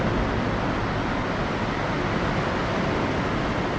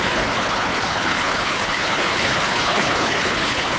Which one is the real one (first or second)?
first